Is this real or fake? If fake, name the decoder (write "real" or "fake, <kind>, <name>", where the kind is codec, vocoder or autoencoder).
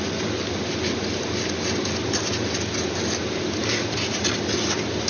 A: real